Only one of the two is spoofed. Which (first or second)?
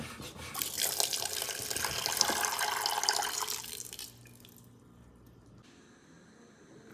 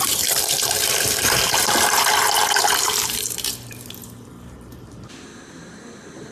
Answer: second